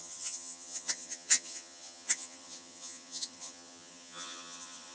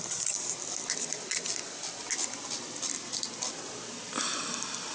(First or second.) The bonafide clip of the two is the second